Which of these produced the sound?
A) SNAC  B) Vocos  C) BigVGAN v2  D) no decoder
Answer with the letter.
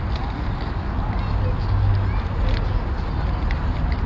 D